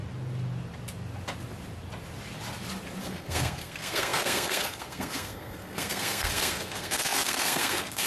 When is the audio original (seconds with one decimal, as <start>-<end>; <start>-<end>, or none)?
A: 0.0-3.0